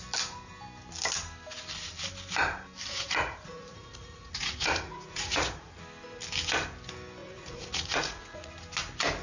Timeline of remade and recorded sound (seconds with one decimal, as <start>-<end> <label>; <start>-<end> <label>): 0.0-2.9 recorded; 2.9-5.8 remade; 5.8-7.2 recorded; 7.2-8.5 remade; 8.5-9.2 recorded